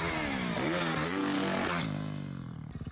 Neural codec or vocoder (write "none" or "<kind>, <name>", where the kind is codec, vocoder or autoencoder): none